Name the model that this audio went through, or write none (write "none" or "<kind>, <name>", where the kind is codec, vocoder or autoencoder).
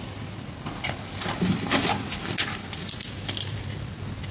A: none